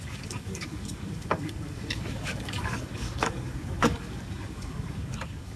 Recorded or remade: remade